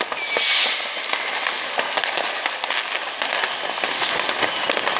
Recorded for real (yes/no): yes